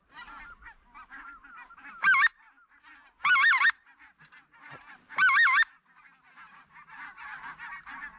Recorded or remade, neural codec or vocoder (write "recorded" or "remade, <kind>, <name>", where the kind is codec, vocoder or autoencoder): recorded